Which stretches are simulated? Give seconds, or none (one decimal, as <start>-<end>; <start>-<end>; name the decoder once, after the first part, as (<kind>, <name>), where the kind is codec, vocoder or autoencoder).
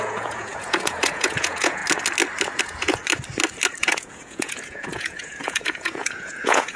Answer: 0.0-1.8 (vocoder, Vocos); 2.6-3.0; 3.8-6.8